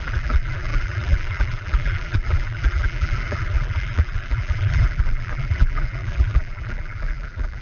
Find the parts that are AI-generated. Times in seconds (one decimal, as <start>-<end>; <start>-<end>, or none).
0.0-7.6